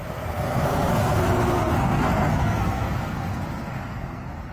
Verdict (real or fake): fake